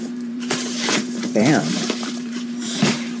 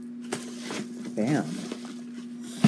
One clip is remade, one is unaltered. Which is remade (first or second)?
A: first